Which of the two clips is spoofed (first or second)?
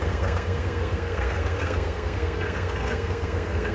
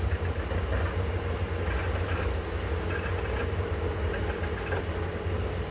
first